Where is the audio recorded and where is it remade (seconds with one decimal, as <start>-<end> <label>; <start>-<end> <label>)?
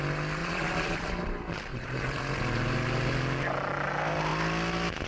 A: 0.0-0.4 recorded; 0.4-1.1 remade; 1.1-1.7 recorded; 1.7-2.2 remade; 2.2-5.1 recorded